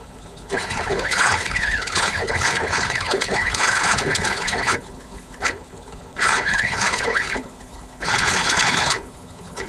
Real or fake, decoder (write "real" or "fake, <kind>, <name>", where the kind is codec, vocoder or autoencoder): fake, codec, HILCodec